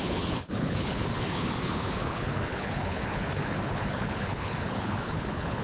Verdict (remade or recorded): remade